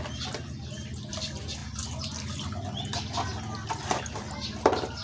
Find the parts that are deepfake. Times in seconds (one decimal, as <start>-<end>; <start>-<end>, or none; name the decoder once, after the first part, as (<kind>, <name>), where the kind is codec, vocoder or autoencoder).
none

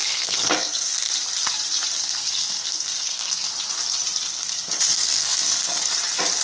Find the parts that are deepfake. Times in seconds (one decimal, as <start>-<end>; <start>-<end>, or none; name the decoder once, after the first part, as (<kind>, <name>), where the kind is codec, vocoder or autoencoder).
0.0-1.1 (codec, SNAC); 2.0-3.5; 4.4-5.9

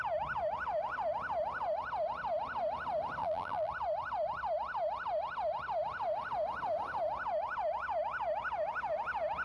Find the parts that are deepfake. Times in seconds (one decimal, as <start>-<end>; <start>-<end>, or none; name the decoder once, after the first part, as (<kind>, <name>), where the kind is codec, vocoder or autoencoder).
3.2-3.7 (vocoder, BigVGAN v2)

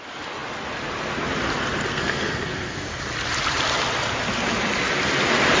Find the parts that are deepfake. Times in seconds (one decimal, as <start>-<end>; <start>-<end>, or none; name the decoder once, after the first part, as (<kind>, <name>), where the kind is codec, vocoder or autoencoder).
1.9-3.0 (codec, SNAC)

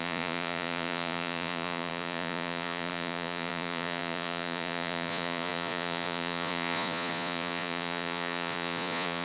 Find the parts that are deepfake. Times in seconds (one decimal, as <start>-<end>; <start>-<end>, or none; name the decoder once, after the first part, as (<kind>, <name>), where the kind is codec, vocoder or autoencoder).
0.0-9.2 (vocoder, Vocos)

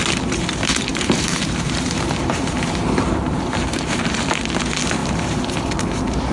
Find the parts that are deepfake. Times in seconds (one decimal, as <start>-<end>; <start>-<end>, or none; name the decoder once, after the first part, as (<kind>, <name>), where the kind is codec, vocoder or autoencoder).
0.9-4.4 (vocoder, BigVGAN v2); 5.0-5.7

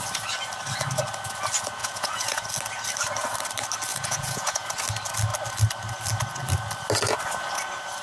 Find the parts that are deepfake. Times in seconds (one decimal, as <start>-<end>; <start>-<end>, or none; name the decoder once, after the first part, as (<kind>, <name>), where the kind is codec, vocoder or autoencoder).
1.8-2.4 (vocoder, Vocos); 3.9-4.7

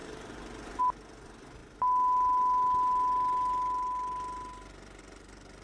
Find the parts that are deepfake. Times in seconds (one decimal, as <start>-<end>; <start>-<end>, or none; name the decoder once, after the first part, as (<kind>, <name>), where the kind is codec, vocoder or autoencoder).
0.0-0.8 (vocoder, BigVGAN v2)